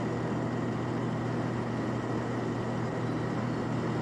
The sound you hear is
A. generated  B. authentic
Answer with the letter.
B